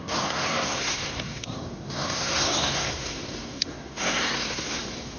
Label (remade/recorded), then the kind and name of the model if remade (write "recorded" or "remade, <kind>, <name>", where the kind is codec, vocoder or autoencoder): remade, codec, SNAC